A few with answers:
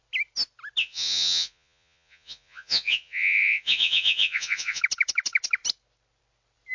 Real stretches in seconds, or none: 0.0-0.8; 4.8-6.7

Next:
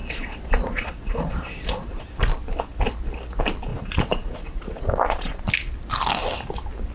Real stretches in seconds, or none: 2.0-3.7; 5.5-6.9

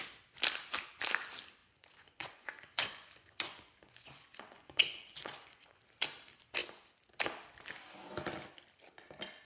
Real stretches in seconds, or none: 0.0-1.6; 5.8-9.5

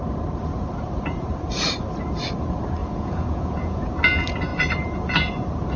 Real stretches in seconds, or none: 0.0-2.8; 3.8-5.8

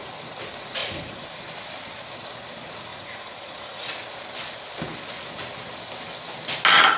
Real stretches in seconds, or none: 0.0-0.8; 1.4-2.9; 3.9-7.0

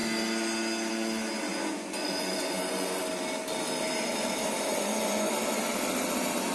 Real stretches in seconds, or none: 0.0-1.5; 3.0-4.7; 5.3-6.5

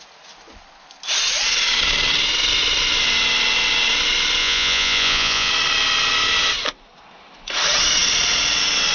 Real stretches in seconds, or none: 0.0-4.4; 5.5-8.9

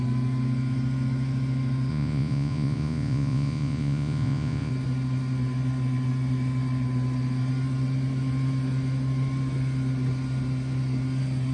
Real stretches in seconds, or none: 0.0-1.9; 4.7-11.5